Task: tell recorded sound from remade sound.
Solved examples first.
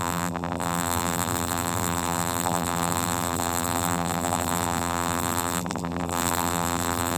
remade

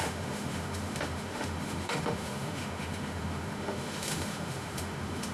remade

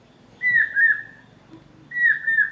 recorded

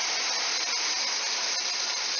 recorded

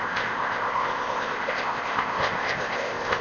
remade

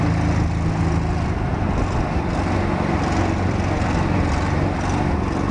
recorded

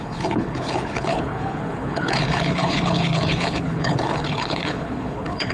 remade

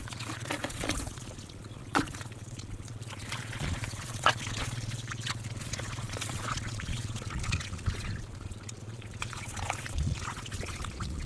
remade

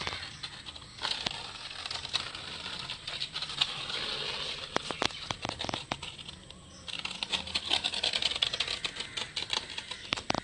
recorded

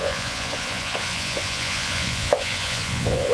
remade